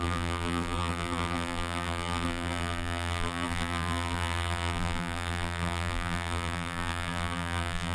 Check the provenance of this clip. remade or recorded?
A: remade